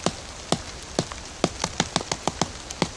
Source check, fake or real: real